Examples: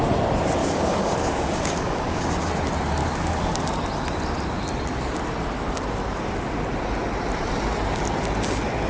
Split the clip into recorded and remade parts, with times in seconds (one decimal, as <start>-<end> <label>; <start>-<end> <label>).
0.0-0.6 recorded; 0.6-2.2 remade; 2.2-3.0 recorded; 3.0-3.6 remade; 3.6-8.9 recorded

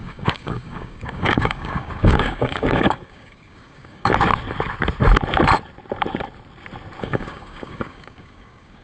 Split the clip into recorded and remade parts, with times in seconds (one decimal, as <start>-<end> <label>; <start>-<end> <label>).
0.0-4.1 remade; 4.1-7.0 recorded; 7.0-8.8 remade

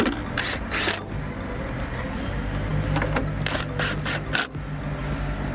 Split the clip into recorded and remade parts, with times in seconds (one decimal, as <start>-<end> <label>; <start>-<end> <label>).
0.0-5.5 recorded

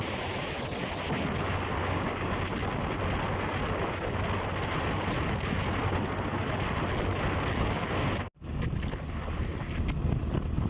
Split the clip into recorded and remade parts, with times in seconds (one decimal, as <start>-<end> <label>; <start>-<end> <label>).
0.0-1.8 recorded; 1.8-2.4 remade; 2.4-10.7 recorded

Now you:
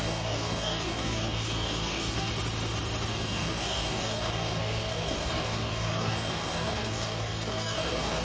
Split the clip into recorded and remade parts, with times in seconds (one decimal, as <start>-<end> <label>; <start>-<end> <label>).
0.0-2.3 remade; 2.3-3.1 recorded; 3.1-8.2 remade

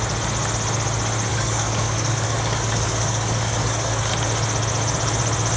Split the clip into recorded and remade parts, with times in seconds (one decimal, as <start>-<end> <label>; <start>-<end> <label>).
0.0-1.3 recorded; 1.3-4.1 remade; 4.1-5.6 recorded

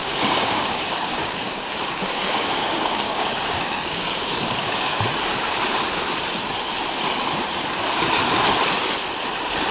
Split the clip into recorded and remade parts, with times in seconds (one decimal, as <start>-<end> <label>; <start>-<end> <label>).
0.0-5.0 remade; 5.0-9.7 recorded

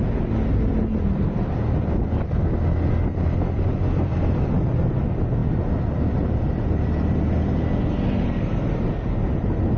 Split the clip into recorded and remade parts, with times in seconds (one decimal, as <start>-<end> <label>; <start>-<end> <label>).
0.0-9.8 recorded